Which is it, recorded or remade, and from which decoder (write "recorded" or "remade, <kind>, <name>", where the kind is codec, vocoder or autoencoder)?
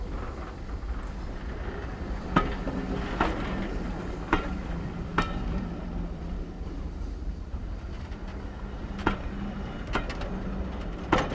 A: recorded